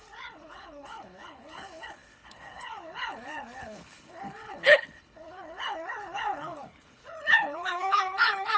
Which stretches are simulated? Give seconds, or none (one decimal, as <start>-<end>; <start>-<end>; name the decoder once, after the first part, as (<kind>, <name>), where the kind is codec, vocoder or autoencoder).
0.0-8.6 (codec, HILCodec)